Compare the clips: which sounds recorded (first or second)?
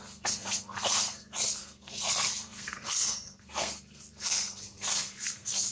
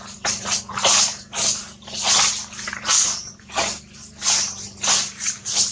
second